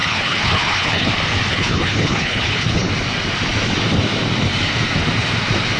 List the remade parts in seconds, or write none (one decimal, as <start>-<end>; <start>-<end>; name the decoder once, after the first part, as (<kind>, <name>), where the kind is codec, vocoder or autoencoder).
0.0-1.1 (codec, HILCodec); 1.5-2.9